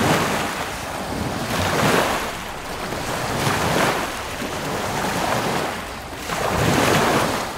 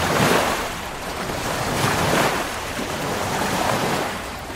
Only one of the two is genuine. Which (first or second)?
first